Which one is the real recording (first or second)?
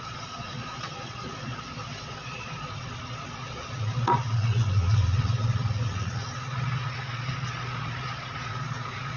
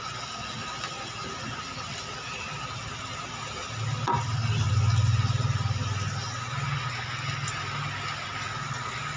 second